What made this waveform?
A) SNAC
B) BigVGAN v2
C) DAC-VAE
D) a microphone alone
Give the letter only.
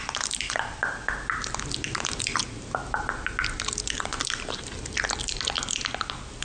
D